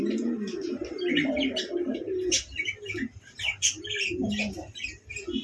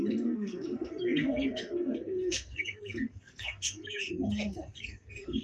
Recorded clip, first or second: first